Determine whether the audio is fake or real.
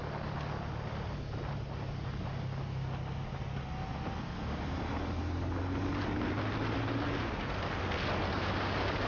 real